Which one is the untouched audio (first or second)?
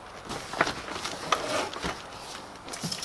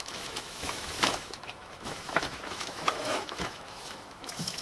first